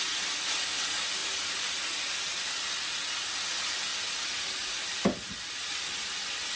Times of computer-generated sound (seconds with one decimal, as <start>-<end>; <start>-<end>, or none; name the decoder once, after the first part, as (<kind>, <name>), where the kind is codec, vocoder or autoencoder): none